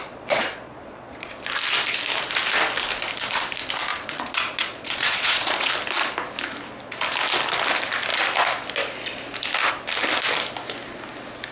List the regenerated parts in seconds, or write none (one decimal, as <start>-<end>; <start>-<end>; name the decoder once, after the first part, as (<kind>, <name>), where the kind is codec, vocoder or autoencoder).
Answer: 0.0-1.3 (vocoder, Vocos); 3.9-5.7